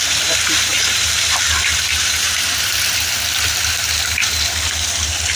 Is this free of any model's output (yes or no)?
no